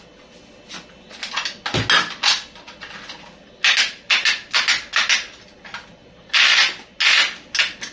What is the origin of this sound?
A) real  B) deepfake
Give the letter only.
A